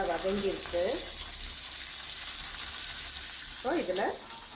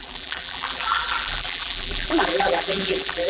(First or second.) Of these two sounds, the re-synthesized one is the second